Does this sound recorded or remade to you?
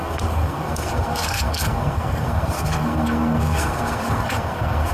remade